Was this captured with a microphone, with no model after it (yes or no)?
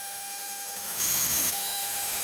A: no